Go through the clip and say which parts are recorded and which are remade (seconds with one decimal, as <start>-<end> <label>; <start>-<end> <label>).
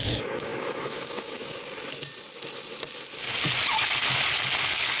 0.0-1.6 remade; 1.6-4.6 recorded; 4.6-5.0 remade